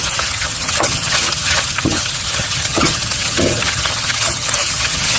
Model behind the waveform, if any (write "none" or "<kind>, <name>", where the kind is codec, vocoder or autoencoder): vocoder, HiFi-GAN